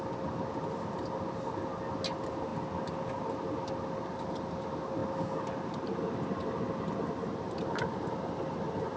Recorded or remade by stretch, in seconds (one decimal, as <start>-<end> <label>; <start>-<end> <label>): 0.0-9.0 recorded